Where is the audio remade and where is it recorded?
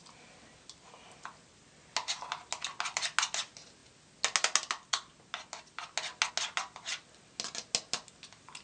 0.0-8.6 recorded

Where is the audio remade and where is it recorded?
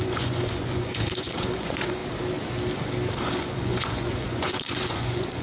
0.0-2.0 remade; 2.0-3.3 recorded; 3.3-5.4 remade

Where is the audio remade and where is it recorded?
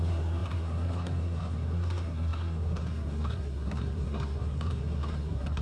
0.0-5.6 remade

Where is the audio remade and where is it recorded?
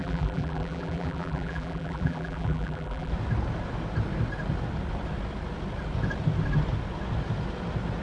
0.0-3.1 remade; 3.1-8.0 recorded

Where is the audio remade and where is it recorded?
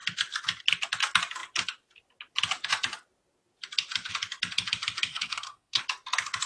0.0-5.1 recorded; 5.1-5.8 remade; 5.8-6.5 recorded